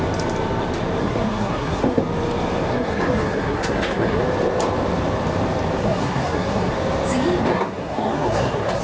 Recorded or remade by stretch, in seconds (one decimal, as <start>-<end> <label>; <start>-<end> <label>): 0.0-1.0 recorded; 1.0-2.0 remade; 2.0-2.7 recorded; 2.7-4.2 remade; 4.2-5.8 recorded; 5.8-6.7 remade; 6.7-7.5 recorded; 7.5-8.8 remade